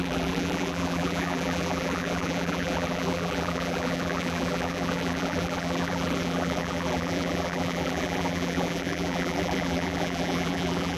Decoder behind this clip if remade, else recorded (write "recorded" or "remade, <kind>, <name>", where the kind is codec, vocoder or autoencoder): remade, vocoder, BigVGAN v2